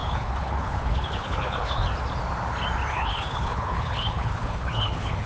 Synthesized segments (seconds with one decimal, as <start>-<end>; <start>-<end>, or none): 0.0-1.8; 2.9-5.3